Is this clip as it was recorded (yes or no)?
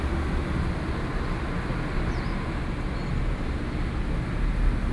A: yes